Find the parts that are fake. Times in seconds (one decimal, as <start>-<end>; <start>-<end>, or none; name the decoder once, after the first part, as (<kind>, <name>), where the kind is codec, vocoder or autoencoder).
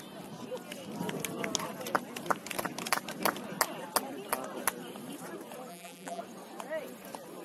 5.7-6.2 (vocoder, BigVGAN v2)